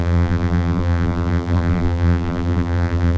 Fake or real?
fake